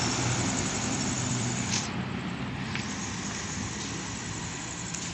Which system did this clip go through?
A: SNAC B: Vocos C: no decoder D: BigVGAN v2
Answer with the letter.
D